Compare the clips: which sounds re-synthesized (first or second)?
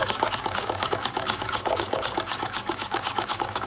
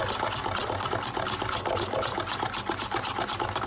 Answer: first